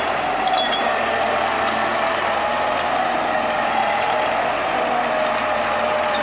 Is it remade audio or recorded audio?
recorded